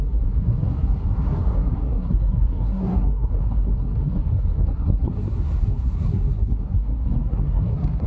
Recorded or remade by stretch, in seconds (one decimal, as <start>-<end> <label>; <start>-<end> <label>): 0.0-8.1 remade